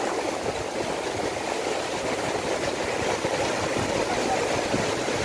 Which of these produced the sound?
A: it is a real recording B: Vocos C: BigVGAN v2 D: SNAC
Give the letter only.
A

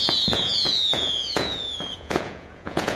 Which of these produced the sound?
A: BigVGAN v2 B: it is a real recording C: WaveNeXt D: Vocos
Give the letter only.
D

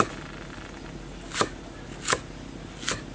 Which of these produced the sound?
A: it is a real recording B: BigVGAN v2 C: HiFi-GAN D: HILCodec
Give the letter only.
A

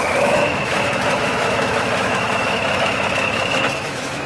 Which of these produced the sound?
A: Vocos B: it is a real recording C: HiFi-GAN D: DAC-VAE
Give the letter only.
D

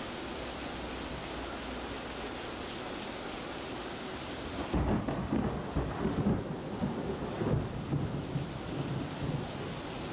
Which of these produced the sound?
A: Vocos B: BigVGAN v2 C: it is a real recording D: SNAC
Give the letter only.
C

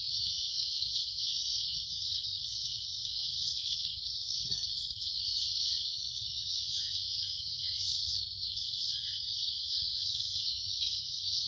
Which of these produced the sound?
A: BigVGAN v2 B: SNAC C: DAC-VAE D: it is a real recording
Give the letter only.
B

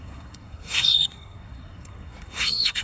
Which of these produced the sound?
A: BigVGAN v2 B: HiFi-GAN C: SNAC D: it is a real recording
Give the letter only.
C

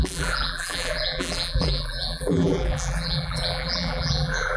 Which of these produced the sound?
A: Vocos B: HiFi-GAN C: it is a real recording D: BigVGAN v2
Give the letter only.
D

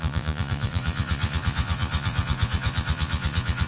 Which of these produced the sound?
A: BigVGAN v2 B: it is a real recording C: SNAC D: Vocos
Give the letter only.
D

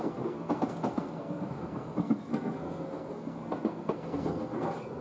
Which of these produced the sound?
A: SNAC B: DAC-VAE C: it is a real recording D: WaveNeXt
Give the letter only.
A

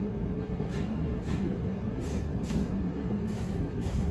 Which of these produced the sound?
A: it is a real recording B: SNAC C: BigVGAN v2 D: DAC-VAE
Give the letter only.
B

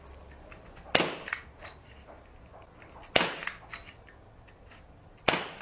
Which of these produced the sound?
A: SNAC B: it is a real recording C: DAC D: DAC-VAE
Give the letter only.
B